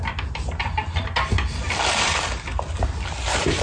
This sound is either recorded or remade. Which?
recorded